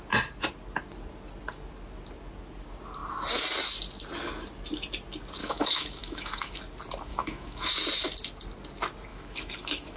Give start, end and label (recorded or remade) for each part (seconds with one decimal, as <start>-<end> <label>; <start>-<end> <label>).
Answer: 0.0-5.4 recorded; 5.4-6.6 remade; 6.6-7.1 recorded; 7.1-7.7 remade; 7.7-9.1 recorded; 9.1-10.0 remade